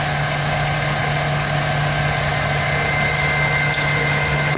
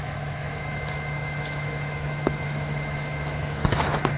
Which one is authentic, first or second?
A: first